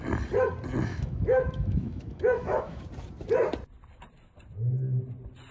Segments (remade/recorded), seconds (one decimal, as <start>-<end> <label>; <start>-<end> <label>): 0.0-0.9 recorded; 0.9-2.8 remade; 2.8-5.5 recorded